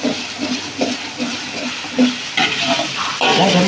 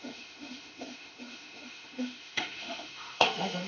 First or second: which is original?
first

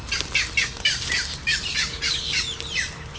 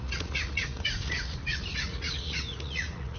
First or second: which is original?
first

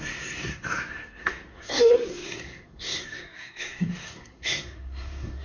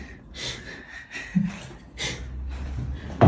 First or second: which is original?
second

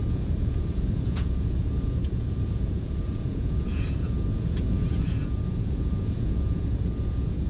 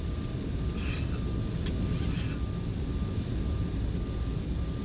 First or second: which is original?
second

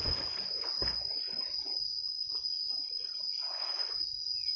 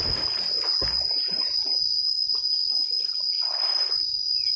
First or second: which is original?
second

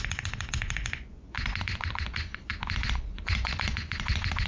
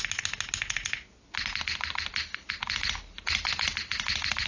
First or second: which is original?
second